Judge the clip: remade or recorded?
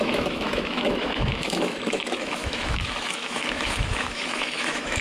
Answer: remade